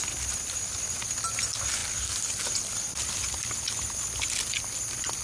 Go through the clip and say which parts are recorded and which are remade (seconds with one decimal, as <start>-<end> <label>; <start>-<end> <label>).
0.0-5.2 recorded